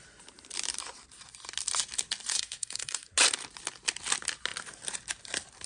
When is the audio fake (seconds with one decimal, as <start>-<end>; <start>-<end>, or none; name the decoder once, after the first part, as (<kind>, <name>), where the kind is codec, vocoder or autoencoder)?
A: 2.3-3.1 (codec, SNAC)